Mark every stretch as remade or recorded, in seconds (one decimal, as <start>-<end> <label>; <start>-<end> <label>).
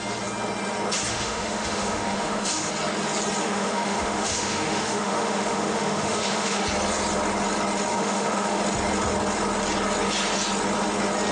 0.0-1.1 recorded; 1.1-2.7 remade; 2.7-3.4 recorded; 3.4-6.6 remade; 6.6-7.9 recorded; 7.9-8.6 remade; 8.6-11.3 recorded